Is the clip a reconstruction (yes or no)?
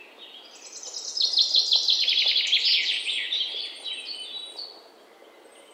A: no